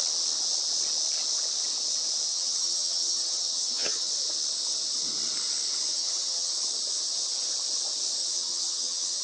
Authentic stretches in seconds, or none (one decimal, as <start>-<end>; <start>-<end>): 0.0-2.3; 4.1-5.9; 6.5-8.2